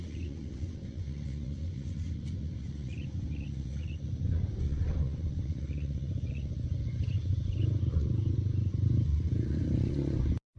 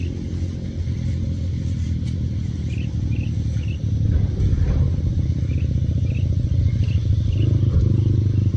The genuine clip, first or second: second